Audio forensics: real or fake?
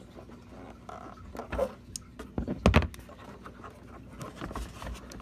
real